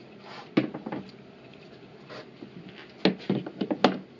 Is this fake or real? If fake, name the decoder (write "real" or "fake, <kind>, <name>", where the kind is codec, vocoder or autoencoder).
real